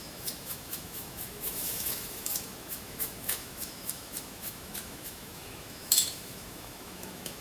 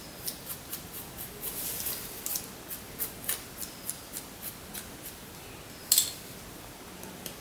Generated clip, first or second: first